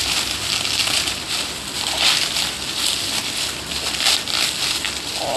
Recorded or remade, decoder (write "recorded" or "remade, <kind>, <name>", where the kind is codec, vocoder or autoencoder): recorded